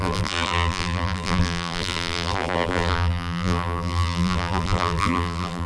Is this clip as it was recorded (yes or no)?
no